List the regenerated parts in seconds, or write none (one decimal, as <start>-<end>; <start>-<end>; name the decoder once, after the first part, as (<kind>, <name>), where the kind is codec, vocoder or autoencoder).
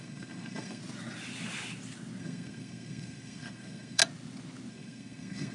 0.0-0.8 (codec, SNAC); 2.2-4.0; 4.7-5.5